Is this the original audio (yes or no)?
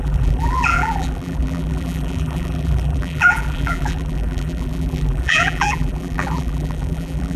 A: no